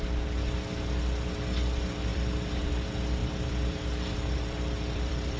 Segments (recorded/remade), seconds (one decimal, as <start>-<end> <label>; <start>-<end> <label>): 0.0-2.1 recorded; 2.1-2.7 remade; 2.7-3.2 recorded; 3.2-5.4 remade